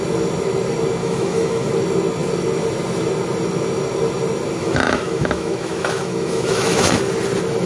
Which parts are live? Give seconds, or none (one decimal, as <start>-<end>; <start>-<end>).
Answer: 0.0-1.0; 1.7-4.6; 7.0-7.7